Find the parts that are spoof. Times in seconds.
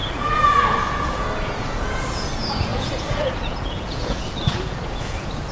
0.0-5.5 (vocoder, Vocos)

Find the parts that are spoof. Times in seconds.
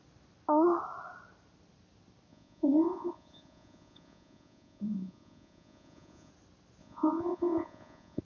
2.3-6.3 (vocoder, Vocos); 6.8-8.2